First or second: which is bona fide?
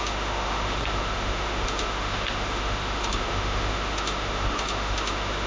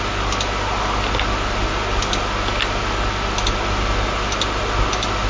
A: second